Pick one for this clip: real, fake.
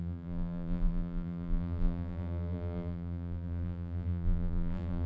fake